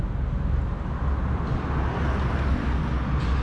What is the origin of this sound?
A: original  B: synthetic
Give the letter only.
A